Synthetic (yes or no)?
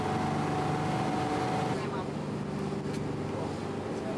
no